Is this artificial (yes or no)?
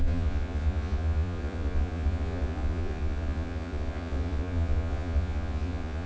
yes